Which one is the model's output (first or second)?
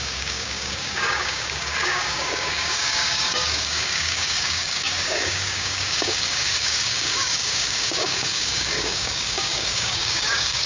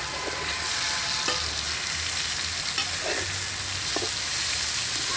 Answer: first